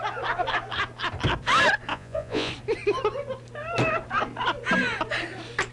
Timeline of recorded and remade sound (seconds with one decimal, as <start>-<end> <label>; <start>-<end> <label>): 0.0-1.9 recorded; 1.9-2.5 remade; 2.5-5.7 recorded